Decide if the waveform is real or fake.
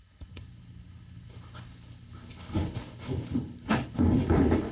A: fake